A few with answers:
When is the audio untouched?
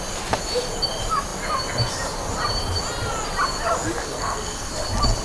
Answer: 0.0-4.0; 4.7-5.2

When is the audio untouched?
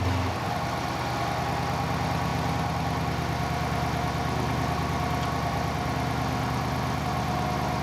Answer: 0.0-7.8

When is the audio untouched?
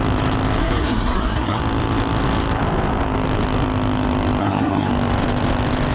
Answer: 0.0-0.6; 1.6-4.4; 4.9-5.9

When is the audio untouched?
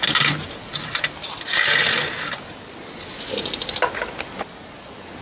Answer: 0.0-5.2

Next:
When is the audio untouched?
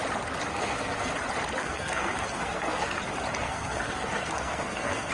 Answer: 0.0-0.5; 1.1-1.6; 3.0-3.4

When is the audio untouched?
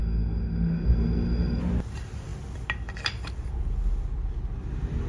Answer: 1.6-5.1